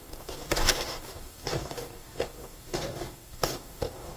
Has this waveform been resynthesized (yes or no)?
yes